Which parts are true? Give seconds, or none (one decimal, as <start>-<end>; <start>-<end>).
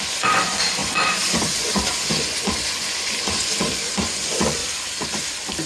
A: 4.6-5.7